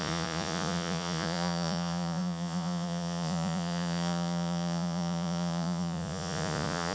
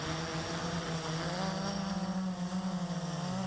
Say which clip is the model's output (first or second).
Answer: first